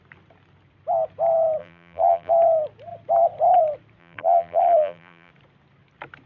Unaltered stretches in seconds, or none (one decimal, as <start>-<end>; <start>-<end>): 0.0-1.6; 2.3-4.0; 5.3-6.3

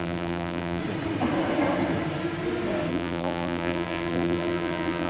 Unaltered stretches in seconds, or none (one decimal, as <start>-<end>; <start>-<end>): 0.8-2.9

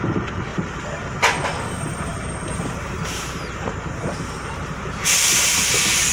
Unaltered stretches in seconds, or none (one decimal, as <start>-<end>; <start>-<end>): 0.0-0.5; 1.0-1.9; 5.5-6.1